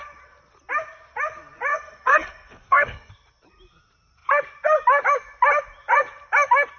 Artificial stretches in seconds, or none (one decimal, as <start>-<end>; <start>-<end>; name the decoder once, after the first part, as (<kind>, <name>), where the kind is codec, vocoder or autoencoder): 1.7-3.1 (codec, SNAC)